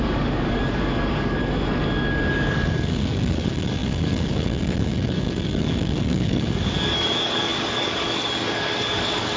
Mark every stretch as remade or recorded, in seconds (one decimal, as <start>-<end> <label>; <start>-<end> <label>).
0.0-1.4 remade; 1.4-2.3 recorded; 2.3-9.4 remade